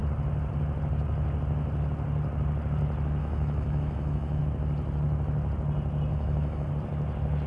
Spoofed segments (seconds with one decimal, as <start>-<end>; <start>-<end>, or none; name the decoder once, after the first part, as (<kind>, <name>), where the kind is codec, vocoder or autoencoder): 3.2-4.4 (autoencoder, DAC-VAE); 6.1-6.7